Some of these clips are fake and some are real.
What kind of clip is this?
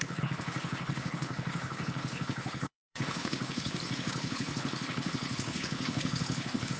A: fake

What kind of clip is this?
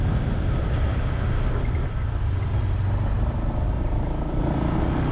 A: real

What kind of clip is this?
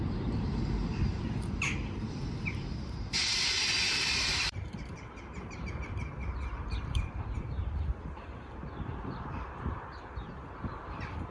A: fake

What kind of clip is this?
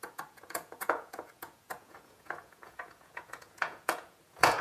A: fake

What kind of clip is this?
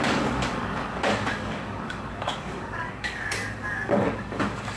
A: fake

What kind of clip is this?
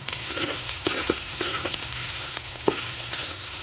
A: fake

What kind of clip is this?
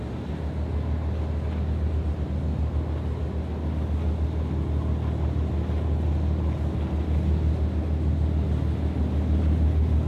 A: real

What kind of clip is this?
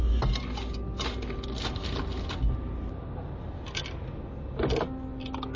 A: real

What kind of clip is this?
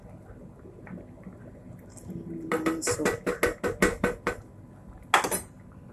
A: real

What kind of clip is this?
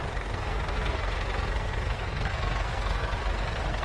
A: fake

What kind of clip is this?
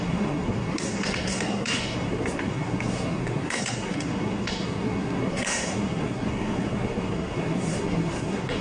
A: fake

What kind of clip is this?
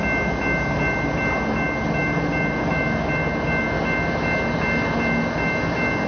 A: real